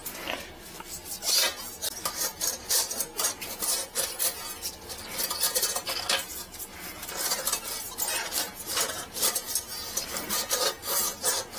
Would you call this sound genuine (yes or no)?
yes